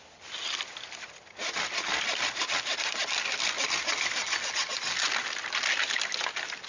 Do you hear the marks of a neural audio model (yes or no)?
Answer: no